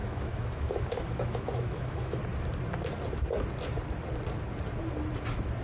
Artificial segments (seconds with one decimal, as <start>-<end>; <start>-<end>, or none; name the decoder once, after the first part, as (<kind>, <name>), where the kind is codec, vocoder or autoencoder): 0.0-2.2 (autoencoder, DAC-VAE)